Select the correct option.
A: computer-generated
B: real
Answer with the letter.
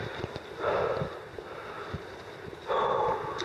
B